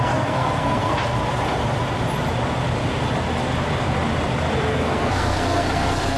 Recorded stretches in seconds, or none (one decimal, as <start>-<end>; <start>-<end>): 1.0-4.7